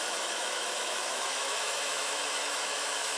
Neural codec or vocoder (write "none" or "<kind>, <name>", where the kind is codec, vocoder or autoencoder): autoencoder, DAC-VAE